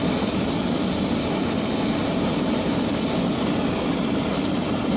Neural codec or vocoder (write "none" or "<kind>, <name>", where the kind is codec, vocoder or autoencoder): none